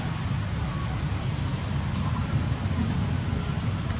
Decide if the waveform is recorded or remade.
recorded